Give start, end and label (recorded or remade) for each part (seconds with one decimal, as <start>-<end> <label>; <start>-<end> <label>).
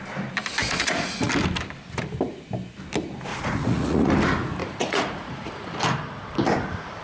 0.0-0.6 recorded; 0.6-1.3 remade; 1.3-3.3 recorded; 3.3-4.1 remade; 4.1-4.6 recorded; 4.6-5.5 remade; 5.5-7.0 recorded